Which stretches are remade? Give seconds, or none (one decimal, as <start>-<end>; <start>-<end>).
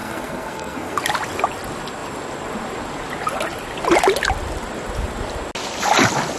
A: 0.0-1.0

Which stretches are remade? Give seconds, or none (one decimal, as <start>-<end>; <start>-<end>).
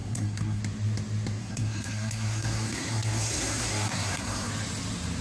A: 0.0-0.6; 1.4-4.5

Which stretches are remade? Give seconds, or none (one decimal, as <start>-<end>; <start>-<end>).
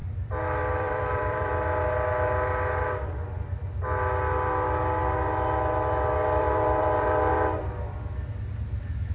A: 0.6-1.5; 6.4-7.3